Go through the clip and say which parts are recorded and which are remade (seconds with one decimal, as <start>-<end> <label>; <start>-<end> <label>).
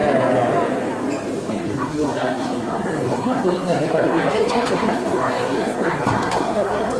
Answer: 0.0-1.5 recorded; 1.5-7.0 remade